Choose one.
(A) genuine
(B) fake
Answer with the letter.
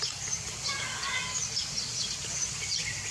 A